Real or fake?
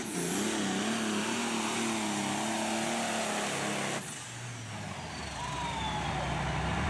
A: real